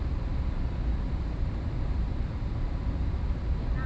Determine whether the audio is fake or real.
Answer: real